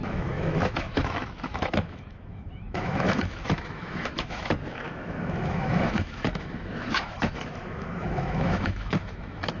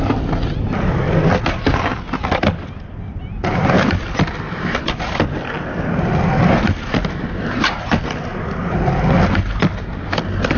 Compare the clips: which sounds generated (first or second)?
first